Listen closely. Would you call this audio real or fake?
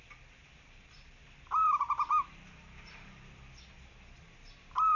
real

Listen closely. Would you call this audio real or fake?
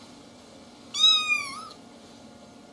fake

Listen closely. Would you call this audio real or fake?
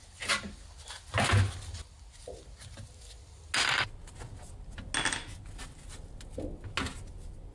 real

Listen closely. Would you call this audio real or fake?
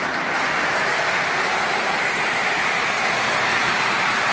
fake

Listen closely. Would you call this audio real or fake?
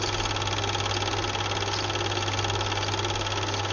real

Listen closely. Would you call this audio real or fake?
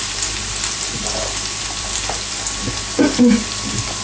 fake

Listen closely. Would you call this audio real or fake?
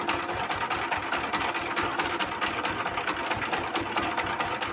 real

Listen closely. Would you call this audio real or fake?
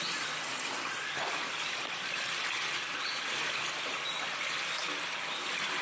fake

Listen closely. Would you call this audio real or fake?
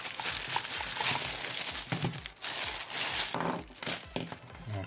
real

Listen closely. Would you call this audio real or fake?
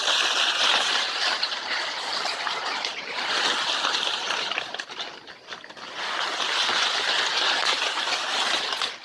real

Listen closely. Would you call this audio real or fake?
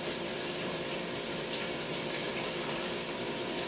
fake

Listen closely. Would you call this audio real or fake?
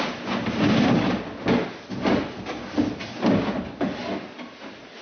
real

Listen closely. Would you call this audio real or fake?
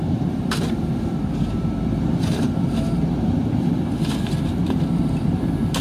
fake